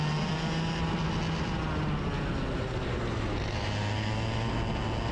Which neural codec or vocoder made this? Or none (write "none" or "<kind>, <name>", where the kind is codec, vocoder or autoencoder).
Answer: none